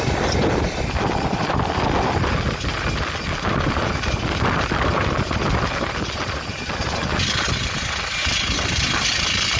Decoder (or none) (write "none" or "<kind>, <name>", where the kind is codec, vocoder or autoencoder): none